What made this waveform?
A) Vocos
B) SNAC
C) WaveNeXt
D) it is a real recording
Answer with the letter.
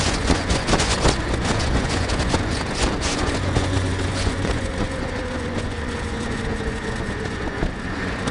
A